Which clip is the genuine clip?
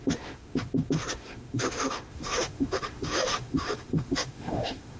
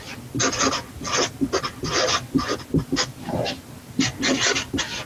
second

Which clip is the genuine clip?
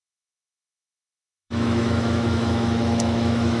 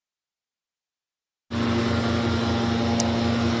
second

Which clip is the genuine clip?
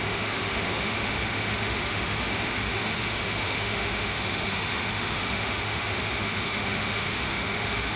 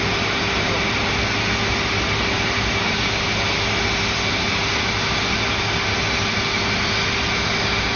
second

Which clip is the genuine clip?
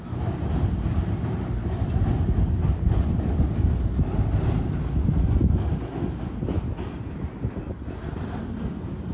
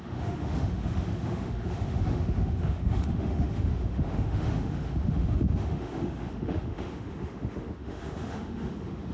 first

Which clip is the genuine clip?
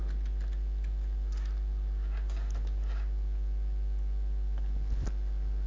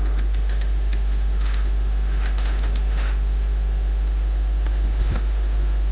first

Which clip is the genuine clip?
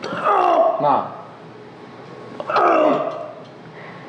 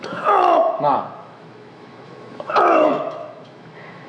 first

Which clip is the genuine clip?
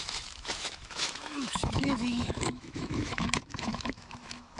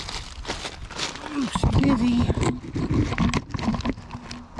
second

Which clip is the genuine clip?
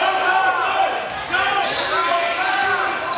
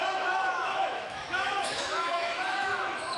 first